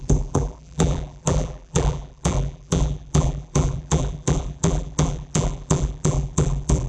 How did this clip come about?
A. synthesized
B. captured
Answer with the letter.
A